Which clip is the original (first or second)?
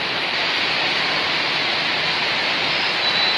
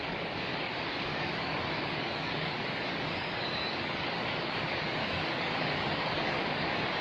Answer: first